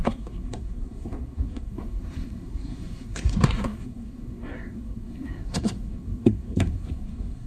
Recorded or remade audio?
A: remade